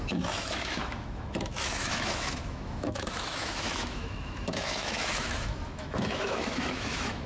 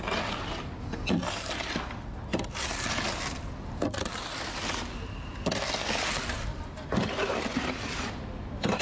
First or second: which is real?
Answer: second